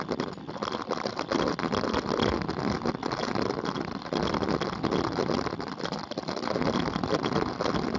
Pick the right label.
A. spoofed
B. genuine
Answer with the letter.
B